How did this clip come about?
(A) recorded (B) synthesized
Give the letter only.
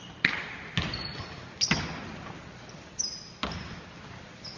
A